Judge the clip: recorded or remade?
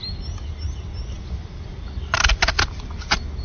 recorded